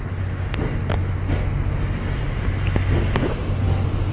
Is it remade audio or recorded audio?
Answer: recorded